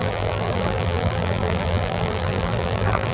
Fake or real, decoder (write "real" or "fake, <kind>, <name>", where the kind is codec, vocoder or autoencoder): fake, vocoder, BigVGAN v2